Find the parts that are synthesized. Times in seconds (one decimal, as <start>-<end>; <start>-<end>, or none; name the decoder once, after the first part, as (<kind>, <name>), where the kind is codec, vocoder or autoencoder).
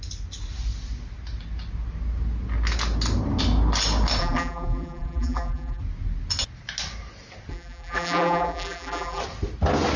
4.2-5.8 (vocoder, BigVGAN v2); 7.5-9.2